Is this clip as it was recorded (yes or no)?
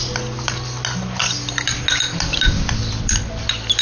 yes